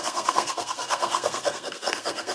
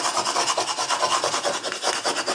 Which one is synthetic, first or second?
first